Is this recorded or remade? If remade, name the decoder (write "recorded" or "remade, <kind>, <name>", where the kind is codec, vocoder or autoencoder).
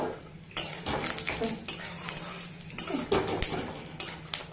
recorded